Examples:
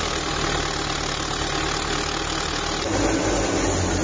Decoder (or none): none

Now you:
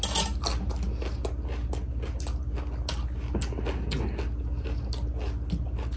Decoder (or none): none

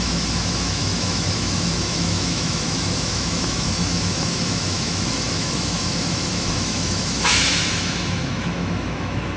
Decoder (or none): autoencoder, DAC-VAE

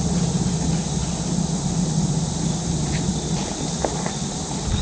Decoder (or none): none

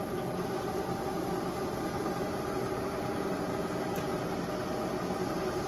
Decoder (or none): none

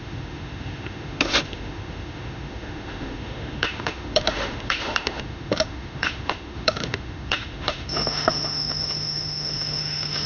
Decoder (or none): autoencoder, DAC-VAE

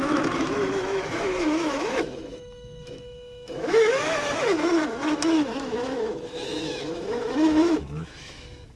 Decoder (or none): autoencoder, DAC-VAE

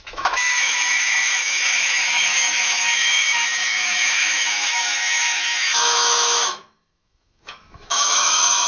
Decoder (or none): autoencoder, DAC-VAE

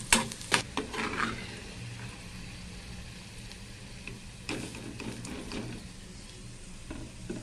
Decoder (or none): none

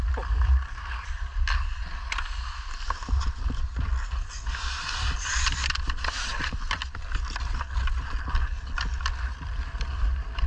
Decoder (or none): none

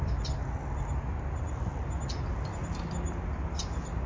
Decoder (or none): none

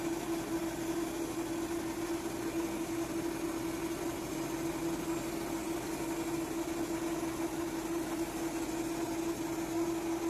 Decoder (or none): none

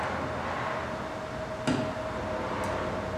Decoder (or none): none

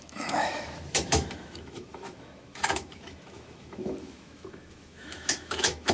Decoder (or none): autoencoder, DAC-VAE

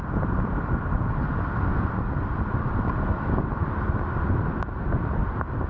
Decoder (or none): none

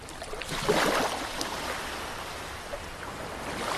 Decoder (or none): none